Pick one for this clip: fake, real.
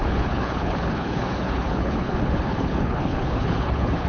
fake